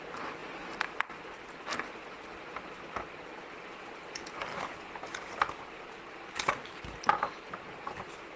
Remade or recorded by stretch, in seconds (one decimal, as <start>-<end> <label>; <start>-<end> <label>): 0.0-8.4 recorded